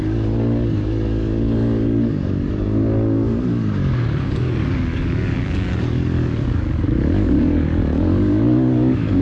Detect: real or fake fake